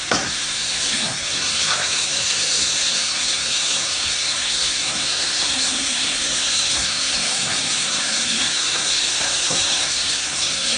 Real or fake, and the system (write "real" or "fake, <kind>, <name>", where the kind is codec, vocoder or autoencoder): fake, codec, SNAC